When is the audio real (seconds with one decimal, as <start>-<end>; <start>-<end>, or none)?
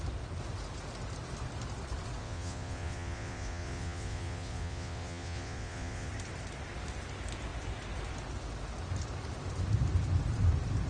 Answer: 0.0-2.2; 6.1-10.9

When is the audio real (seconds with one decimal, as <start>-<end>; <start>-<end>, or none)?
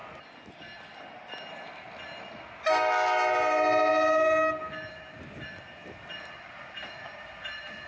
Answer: 0.0-7.9